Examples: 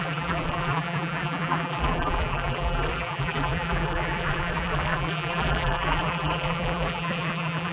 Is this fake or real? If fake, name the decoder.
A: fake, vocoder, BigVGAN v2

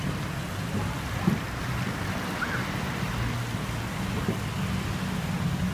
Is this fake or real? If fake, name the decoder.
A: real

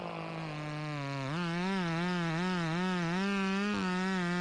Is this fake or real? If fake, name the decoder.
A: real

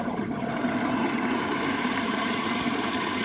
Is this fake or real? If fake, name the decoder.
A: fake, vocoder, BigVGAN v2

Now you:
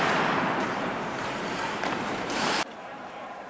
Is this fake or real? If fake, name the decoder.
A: fake, vocoder, BigVGAN v2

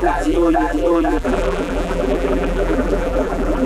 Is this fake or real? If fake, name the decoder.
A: fake, vocoder, BigVGAN v2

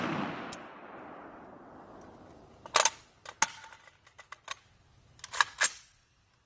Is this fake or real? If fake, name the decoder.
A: real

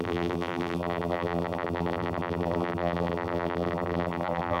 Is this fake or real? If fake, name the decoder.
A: fake, vocoder, BigVGAN v2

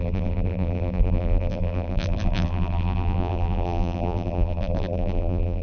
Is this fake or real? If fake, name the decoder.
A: fake, vocoder, BigVGAN v2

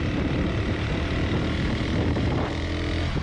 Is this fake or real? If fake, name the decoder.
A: fake, vocoder, BigVGAN v2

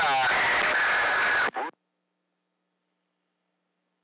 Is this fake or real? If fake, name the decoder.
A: real